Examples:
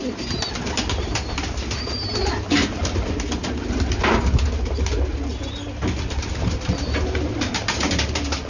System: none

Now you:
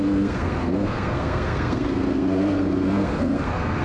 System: codec, SNAC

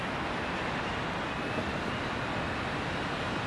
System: none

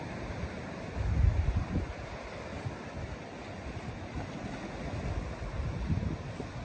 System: none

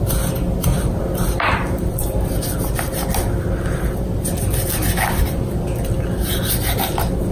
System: none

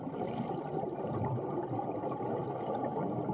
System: none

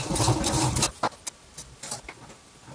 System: none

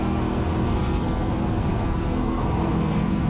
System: codec, SNAC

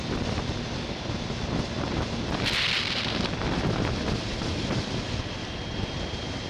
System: none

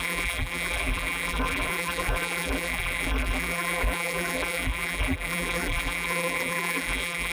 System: vocoder, BigVGAN v2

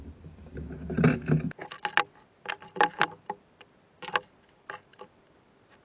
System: none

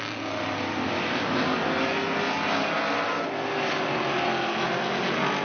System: none